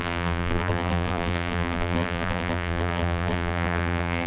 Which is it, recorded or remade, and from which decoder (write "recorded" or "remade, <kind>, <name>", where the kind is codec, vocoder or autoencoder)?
remade, vocoder, BigVGAN v2